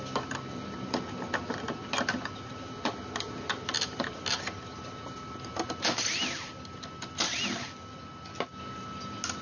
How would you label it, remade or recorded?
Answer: recorded